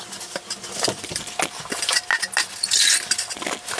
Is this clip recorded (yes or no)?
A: yes